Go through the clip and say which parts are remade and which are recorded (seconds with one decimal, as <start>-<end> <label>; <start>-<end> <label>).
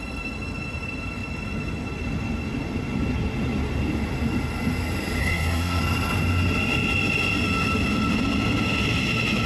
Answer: 0.0-5.2 recorded; 5.2-5.8 remade; 5.8-9.5 recorded